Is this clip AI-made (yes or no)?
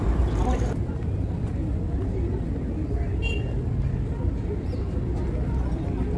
no